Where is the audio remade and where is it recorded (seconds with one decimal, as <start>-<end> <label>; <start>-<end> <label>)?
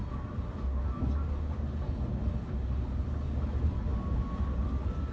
0.0-5.1 recorded